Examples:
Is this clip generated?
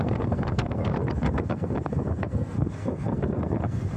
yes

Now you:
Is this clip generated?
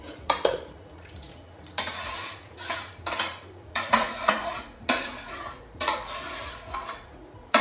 yes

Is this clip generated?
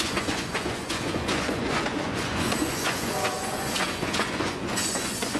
yes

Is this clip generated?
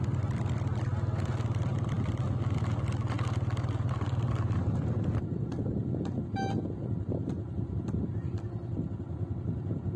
no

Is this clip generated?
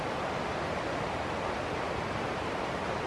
no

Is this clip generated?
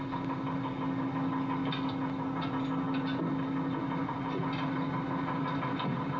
no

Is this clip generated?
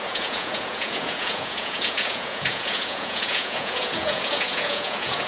yes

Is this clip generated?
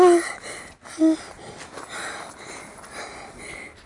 no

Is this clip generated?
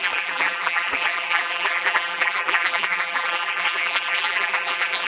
yes